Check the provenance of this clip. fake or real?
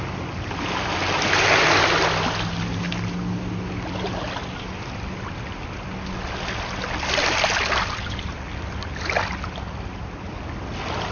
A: real